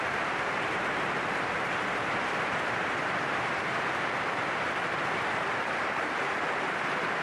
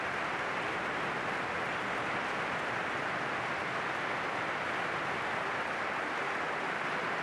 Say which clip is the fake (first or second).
first